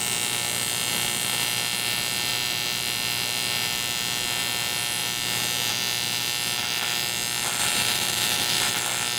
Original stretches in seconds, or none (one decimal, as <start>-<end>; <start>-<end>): 0.0-7.6; 8.7-9.2